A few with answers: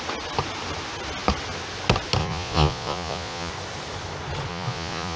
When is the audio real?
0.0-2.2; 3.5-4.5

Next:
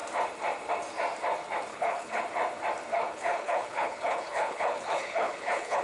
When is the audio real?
0.0-1.7; 2.2-2.9

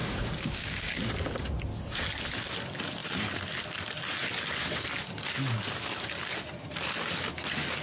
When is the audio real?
1.1-7.8

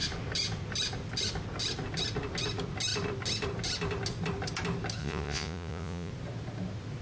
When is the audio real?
0.0-5.0; 6.1-7.0

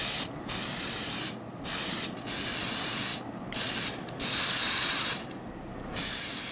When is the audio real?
0.0-6.5